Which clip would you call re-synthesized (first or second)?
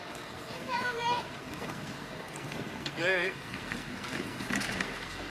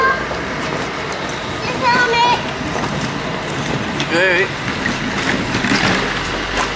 first